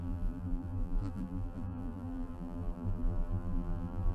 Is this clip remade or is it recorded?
remade